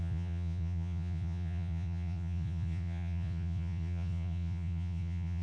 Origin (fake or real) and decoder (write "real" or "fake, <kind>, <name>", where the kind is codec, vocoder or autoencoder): fake, vocoder, Vocos